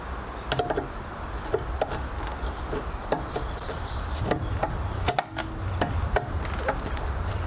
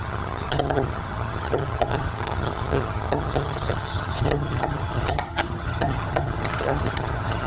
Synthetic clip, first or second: second